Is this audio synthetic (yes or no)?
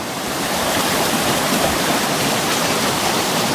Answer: yes